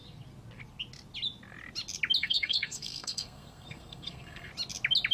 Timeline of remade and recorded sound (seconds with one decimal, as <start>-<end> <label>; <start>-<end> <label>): 0.0-2.2 recorded; 2.2-4.5 remade; 4.5-5.1 recorded